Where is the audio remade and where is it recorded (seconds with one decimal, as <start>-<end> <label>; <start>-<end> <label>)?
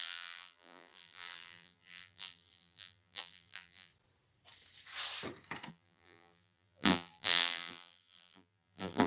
0.0-3.9 remade; 3.9-5.7 recorded; 5.7-9.1 remade